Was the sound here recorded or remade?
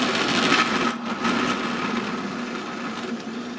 recorded